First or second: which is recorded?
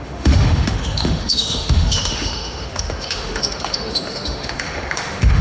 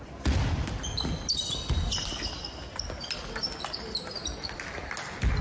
second